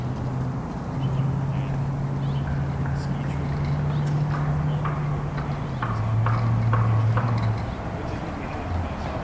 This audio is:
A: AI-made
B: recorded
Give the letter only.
B